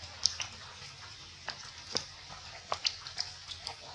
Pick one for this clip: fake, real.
real